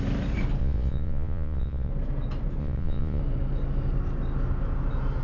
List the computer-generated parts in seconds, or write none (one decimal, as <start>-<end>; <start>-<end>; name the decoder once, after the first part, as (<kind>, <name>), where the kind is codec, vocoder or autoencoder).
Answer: 0.6-1.9 (vocoder, Vocos); 2.6-3.2